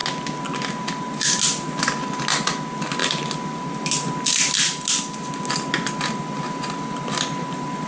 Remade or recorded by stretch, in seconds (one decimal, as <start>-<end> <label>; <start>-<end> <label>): 0.0-7.9 recorded